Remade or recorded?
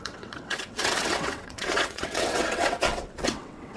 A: remade